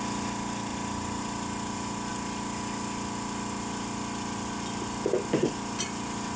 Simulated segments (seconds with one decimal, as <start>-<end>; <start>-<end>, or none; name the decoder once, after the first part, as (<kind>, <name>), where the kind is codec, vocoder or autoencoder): none